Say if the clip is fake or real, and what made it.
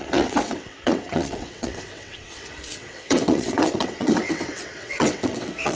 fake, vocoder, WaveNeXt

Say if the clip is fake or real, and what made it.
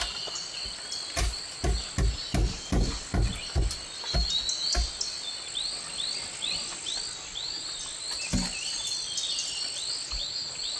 real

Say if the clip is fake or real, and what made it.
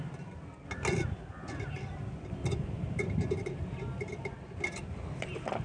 real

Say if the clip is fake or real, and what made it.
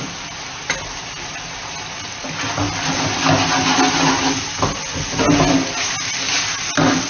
real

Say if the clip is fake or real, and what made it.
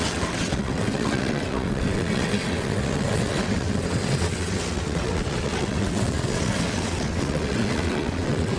fake, vocoder, WaveNeXt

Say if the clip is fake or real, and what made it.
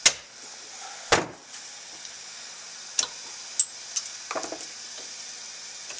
real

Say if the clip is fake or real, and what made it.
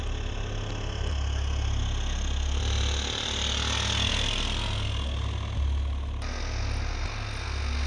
real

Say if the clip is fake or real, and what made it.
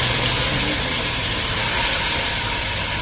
real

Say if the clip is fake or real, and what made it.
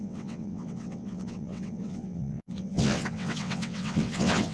fake, vocoder, WaveNeXt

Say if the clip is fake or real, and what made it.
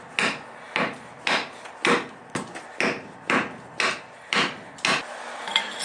real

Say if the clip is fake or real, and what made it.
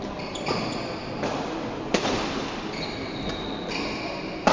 real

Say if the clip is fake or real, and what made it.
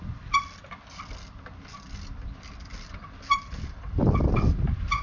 real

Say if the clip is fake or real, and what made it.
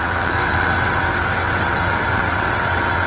fake, vocoder, WaveNeXt